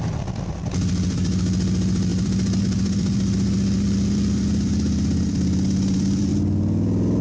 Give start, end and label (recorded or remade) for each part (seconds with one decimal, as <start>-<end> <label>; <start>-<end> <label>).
0.0-6.3 remade; 6.3-7.2 recorded